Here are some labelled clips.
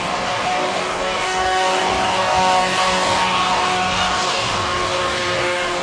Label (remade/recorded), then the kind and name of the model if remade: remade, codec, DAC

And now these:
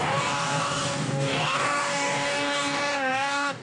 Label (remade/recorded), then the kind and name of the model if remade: remade, codec, DAC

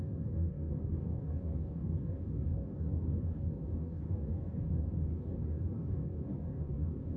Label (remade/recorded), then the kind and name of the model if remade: remade, codec, DAC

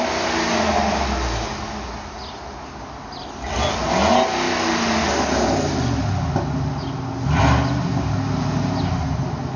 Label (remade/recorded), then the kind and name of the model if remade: recorded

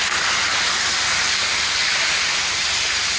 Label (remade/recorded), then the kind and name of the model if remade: recorded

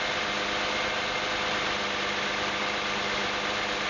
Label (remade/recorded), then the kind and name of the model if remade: recorded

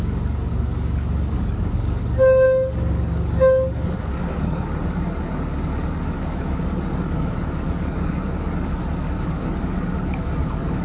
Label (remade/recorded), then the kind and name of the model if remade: remade, codec, DAC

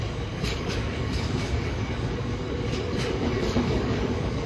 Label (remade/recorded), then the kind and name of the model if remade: remade, codec, DAC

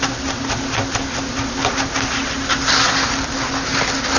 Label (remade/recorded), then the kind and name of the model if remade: recorded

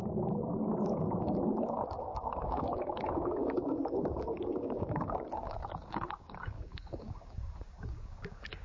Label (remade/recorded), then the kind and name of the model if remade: remade, codec, DAC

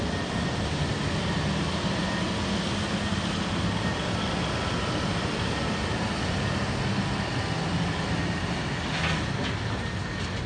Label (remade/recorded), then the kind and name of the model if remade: recorded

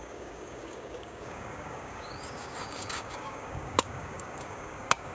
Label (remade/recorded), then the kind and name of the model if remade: remade, codec, DAC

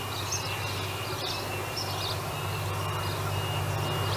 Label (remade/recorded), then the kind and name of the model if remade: recorded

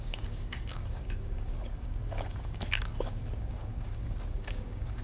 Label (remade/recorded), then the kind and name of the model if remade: remade, codec, DAC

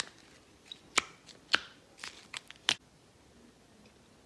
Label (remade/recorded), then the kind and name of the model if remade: recorded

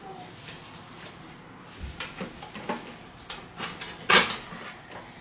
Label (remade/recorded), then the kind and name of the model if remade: recorded